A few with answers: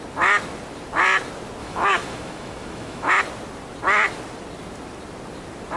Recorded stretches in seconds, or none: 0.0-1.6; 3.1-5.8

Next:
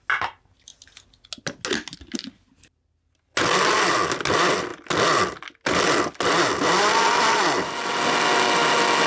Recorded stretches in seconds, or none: 0.0-9.1

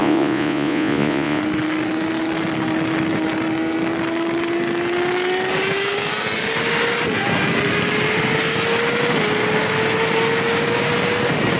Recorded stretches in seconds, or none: 1.4-11.6

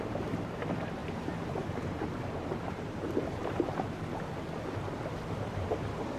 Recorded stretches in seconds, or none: 3.4-4.9

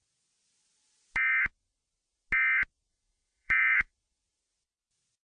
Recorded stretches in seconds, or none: 0.0-2.9; 3.9-5.3